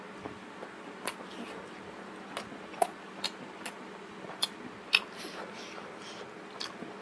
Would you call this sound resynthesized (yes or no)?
no